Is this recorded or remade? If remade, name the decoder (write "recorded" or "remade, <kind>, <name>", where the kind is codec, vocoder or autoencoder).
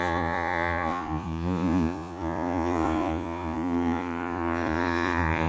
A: remade, vocoder, Vocos